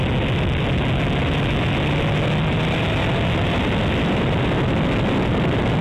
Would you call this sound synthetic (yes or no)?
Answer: no